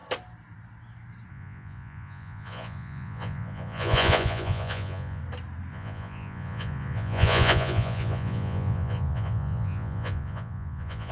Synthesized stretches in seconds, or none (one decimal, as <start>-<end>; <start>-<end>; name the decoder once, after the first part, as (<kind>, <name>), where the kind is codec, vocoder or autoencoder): 1.3-5.2 (vocoder, Vocos); 5.7-11.1